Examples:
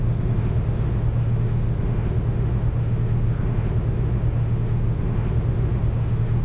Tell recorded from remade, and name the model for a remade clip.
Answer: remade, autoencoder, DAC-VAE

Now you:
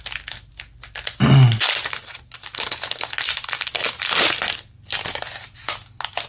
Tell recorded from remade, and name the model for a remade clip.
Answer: recorded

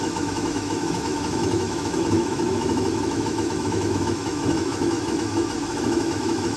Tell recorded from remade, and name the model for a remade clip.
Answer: remade, autoencoder, DAC-VAE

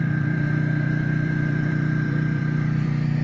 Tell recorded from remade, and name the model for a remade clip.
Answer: remade, vocoder, BigVGAN v2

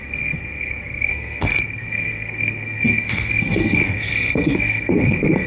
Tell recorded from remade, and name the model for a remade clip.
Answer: remade, codec, SNAC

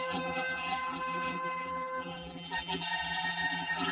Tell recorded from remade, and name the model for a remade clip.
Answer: remade, vocoder, BigVGAN v2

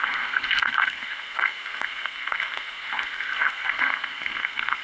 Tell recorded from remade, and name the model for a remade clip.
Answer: remade, codec, SNAC